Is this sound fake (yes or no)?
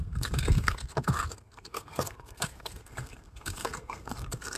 yes